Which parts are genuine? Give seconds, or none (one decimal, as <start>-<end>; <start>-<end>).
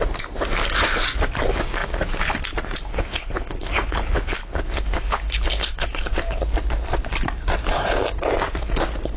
0.0-2.9; 6.4-9.2